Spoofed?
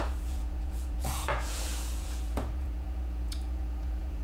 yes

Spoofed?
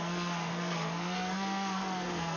yes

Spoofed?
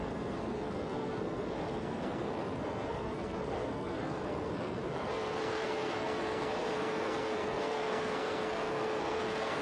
yes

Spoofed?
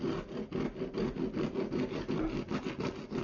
no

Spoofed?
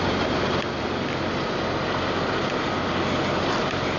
no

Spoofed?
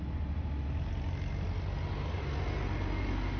no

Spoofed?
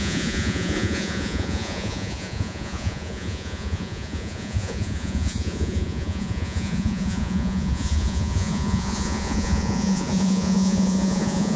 yes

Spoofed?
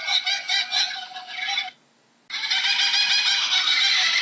no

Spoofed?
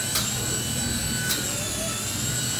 no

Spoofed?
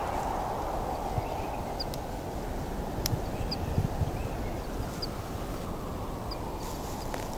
no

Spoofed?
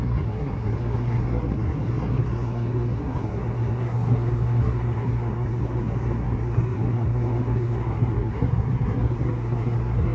yes